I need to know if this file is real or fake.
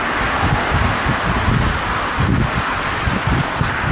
real